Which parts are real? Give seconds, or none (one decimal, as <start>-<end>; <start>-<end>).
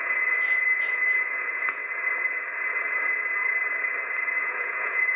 1.8-4.4